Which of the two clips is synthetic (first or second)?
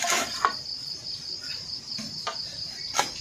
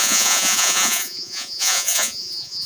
second